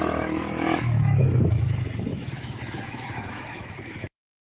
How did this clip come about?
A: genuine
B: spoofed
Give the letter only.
B